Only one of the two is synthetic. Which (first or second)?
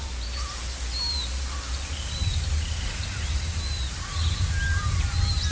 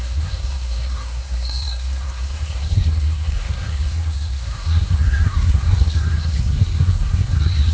second